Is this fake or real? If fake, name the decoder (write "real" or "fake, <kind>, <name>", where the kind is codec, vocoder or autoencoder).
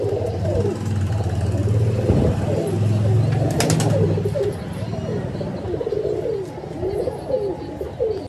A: real